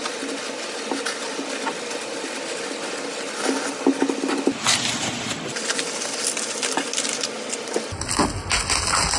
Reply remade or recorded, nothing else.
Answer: recorded